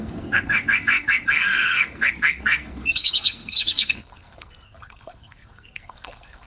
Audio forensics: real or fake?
fake